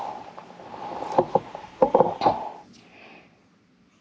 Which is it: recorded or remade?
recorded